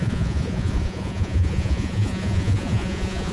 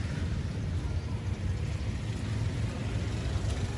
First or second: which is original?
second